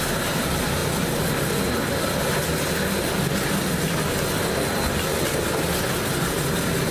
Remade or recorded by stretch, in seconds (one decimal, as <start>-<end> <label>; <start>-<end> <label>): 0.0-6.9 recorded